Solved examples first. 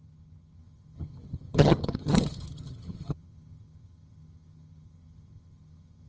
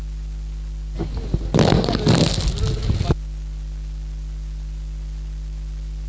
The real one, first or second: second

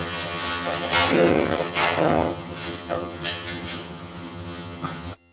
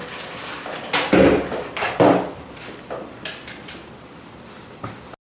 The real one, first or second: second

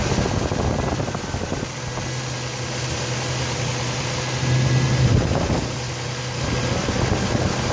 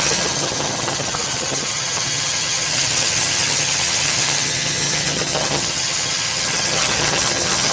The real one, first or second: first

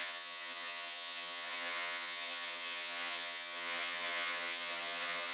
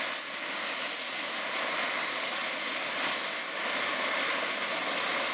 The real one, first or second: second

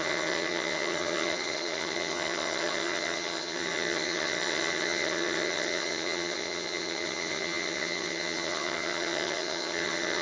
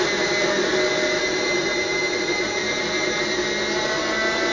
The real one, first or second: second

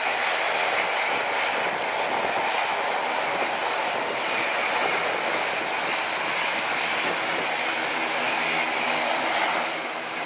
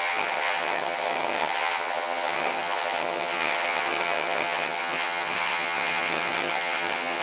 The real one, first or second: first